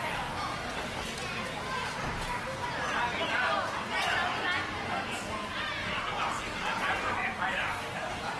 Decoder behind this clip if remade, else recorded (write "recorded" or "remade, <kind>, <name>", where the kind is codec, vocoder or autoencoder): recorded